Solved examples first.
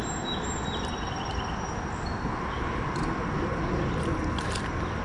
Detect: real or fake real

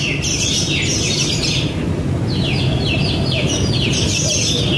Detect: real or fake real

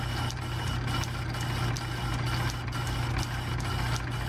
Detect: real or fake real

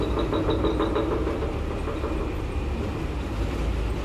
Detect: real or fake real